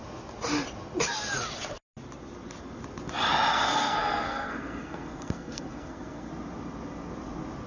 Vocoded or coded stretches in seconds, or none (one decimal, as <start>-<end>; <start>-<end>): 3.5-6.3